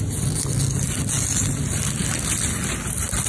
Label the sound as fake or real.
real